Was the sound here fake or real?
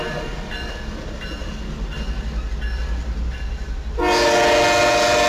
real